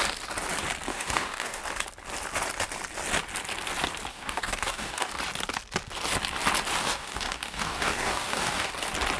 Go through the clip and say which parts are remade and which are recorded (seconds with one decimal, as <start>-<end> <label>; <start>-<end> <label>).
0.0-0.9 recorded; 0.9-1.6 remade; 1.6-4.1 recorded; 4.1-5.1 remade; 5.1-6.8 recorded; 6.8-8.7 remade; 8.7-9.2 recorded